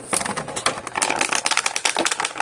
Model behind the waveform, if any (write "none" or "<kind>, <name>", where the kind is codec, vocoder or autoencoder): none